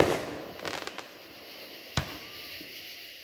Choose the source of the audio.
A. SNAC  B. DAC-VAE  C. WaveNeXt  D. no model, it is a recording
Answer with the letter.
D